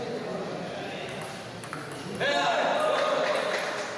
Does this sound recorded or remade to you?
recorded